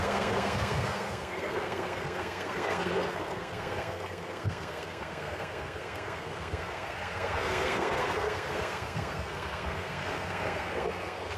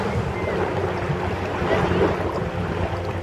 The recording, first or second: second